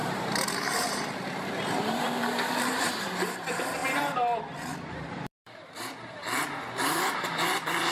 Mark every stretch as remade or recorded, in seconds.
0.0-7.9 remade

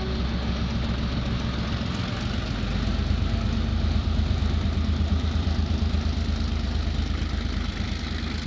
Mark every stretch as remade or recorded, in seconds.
0.0-3.7 recorded; 3.7-8.0 remade; 8.0-8.5 recorded

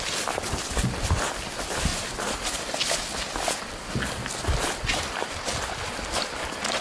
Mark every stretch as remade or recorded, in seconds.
0.0-6.8 recorded

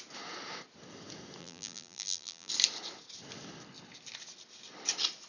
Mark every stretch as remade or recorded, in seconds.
0.0-1.4 recorded; 1.4-2.5 remade; 2.5-5.3 recorded